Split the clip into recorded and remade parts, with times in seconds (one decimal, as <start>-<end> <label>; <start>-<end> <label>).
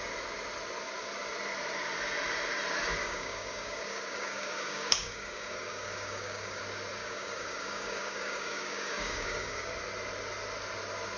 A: 0.0-3.0 recorded; 3.0-6.6 remade; 6.6-7.0 recorded; 7.0-9.7 remade; 9.7-11.2 recorded